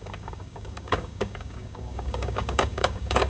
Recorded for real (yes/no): no